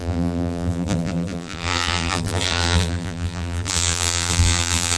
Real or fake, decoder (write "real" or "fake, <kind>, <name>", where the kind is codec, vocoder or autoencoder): fake, vocoder, BigVGAN v2